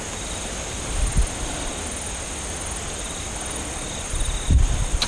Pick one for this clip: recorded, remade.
recorded